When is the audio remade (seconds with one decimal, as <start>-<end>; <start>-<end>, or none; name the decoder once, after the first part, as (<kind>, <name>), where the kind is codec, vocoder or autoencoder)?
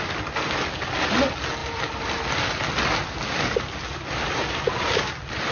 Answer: none